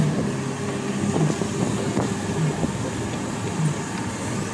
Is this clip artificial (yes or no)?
no